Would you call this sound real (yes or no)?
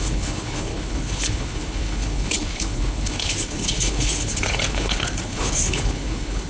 no